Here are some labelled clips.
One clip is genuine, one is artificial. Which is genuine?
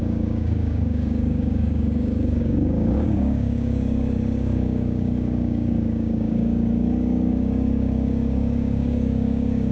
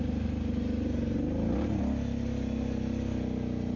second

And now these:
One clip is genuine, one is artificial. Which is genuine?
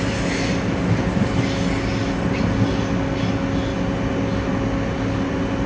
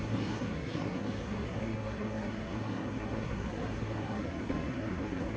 first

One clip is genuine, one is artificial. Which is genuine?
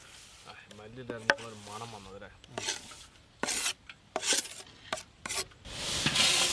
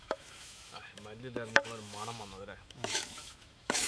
first